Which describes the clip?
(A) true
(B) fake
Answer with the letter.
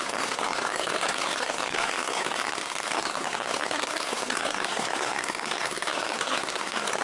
B